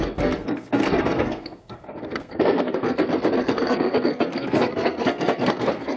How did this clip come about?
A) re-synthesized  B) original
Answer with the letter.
A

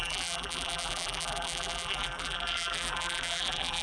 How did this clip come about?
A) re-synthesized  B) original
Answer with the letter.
A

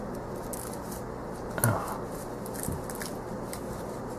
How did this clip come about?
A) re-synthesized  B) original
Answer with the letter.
B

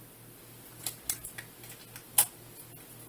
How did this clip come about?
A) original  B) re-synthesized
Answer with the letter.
A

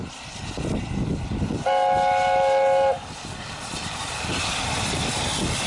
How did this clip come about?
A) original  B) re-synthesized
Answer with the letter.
A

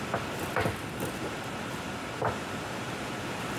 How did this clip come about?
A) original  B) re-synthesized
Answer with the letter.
A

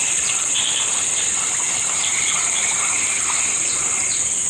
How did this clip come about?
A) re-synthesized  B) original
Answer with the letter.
A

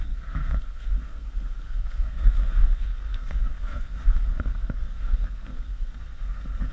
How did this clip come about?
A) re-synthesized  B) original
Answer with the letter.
A